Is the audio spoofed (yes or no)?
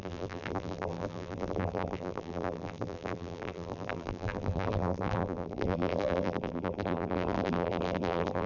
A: yes